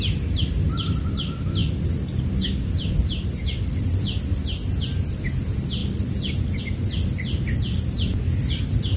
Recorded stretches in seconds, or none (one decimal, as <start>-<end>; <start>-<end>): 0.0-1.6; 5.2-5.8; 6.6-9.0